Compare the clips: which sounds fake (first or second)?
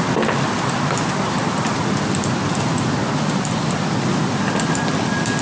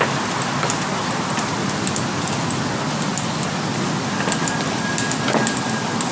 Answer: first